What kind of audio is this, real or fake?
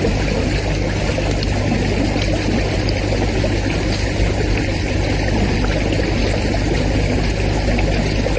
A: real